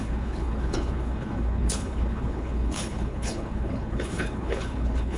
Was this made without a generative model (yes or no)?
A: no